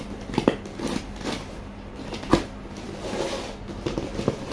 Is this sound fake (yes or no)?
no